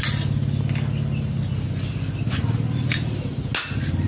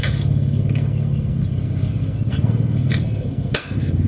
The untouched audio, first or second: first